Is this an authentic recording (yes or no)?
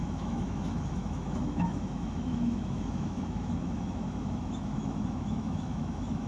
no